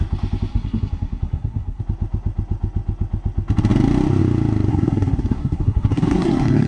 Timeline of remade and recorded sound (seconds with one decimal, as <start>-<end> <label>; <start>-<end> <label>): 0.0-0.5 recorded; 0.5-1.8 remade; 1.8-4.7 recorded; 4.7-6.7 remade